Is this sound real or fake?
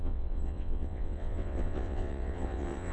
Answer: fake